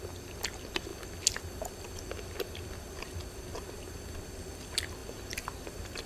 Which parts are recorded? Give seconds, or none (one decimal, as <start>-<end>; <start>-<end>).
0.0-6.1

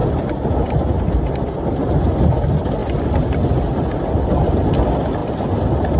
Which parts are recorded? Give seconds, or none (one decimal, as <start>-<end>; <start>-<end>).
2.0-5.2